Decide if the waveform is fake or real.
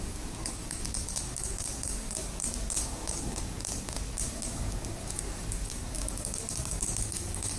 fake